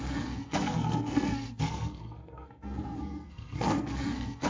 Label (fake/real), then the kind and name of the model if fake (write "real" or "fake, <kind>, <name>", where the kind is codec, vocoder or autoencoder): fake, codec, SNAC